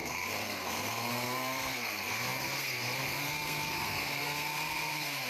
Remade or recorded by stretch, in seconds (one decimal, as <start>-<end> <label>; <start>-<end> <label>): 0.0-5.3 remade